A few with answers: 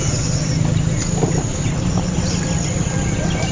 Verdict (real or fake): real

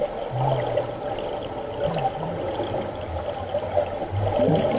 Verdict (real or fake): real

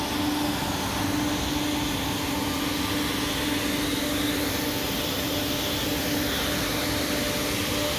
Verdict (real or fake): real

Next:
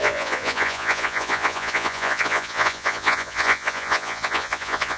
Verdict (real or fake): fake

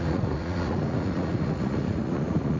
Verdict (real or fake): fake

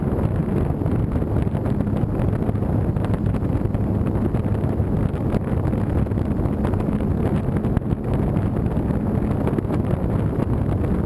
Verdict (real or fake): real